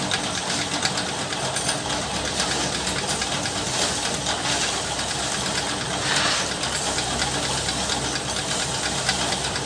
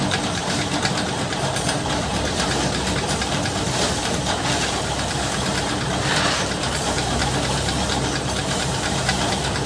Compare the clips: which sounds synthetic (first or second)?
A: second